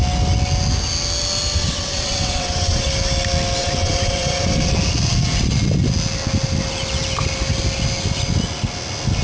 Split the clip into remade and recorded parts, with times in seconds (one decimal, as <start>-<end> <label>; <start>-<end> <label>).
0.0-1.6 recorded; 1.6-2.9 remade; 2.9-3.6 recorded; 3.6-4.7 remade; 4.7-9.2 recorded